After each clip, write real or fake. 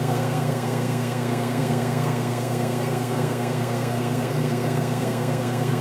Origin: fake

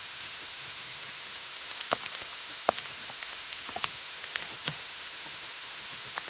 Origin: fake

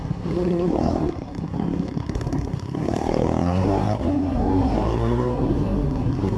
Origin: fake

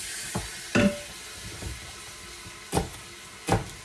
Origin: real